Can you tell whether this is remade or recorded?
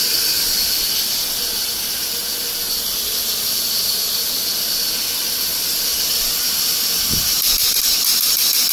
recorded